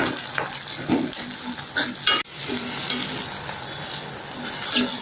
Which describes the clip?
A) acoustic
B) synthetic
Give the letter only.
A